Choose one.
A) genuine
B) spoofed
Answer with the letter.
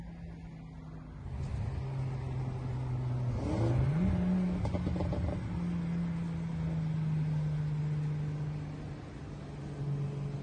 A